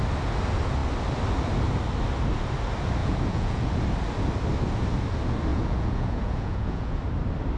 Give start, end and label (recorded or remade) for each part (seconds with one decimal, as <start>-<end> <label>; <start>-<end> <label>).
0.0-3.0 recorded; 3.0-3.7 remade; 3.7-5.5 recorded; 5.5-7.0 remade; 7.0-7.6 recorded